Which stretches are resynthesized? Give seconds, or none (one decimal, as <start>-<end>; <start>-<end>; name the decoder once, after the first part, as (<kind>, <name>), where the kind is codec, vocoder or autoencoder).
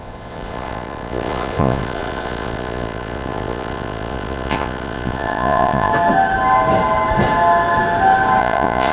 0.0-5.9 (vocoder, Vocos); 8.4-8.9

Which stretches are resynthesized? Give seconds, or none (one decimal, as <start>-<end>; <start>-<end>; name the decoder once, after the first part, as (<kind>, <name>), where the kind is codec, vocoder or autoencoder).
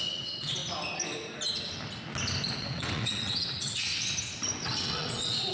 0.0-0.6 (vocoder, WaveNeXt); 2.6-3.9; 4.6-5.5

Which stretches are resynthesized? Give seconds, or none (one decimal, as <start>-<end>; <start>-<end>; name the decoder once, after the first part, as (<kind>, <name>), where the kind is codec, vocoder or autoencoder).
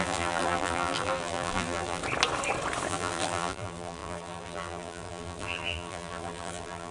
0.0-2.0 (vocoder, BigVGAN v2); 2.9-6.9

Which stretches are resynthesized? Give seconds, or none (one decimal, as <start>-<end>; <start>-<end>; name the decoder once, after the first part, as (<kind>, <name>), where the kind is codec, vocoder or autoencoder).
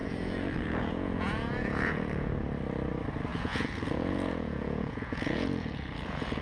0.0-2.3 (vocoder, Vocos); 3.3-6.4